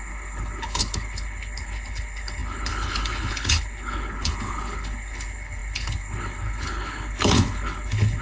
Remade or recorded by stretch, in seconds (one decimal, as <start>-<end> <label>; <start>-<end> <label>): 0.0-8.2 remade